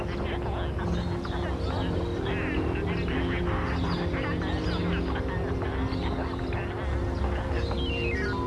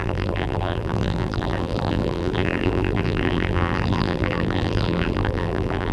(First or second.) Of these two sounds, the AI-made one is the second